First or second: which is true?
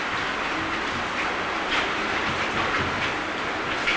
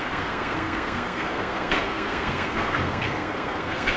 first